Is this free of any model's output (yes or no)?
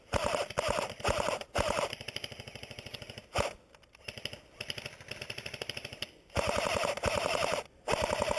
yes